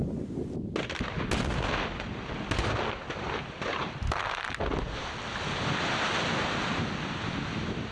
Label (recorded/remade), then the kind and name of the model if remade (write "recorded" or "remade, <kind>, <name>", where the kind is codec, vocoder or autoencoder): recorded